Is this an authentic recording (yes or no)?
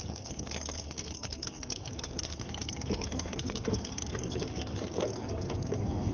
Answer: no